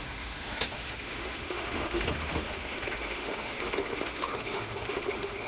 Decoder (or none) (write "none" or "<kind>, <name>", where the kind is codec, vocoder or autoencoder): autoencoder, DAC-VAE